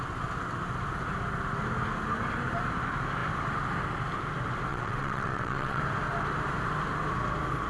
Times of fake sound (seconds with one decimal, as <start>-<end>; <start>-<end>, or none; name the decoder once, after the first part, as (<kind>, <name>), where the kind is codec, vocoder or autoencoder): 4.7-5.8 (vocoder, WaveNeXt)